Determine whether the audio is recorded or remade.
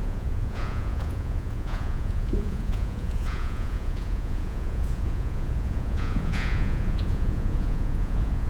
remade